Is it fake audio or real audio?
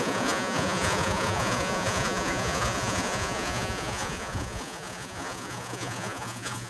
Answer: fake